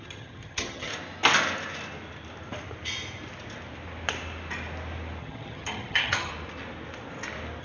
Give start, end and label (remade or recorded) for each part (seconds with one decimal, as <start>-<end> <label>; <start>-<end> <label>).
0.0-0.9 remade; 0.9-5.2 recorded; 5.2-6.3 remade; 6.3-7.6 recorded